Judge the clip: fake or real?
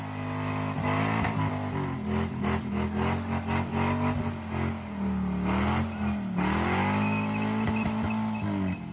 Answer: real